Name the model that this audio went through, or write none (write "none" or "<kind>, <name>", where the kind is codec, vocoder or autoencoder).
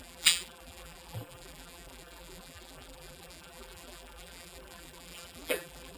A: vocoder, BigVGAN v2